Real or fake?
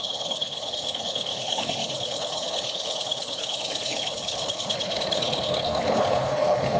fake